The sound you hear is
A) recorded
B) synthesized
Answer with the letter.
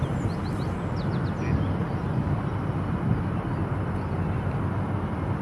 A